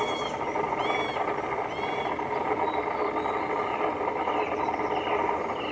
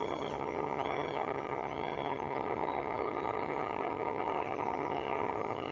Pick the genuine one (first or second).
first